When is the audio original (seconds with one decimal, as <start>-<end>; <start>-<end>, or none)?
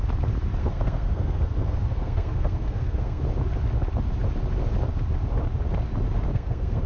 0.0-0.6; 3.2-6.3